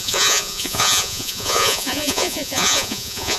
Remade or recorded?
remade